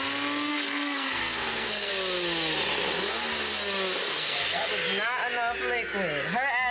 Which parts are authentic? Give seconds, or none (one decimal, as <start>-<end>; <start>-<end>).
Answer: 0.0-0.5; 1.9-4.1; 4.7-6.7